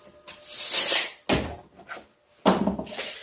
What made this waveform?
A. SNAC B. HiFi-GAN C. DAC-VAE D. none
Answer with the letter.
D